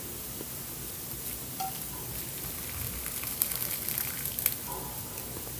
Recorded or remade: recorded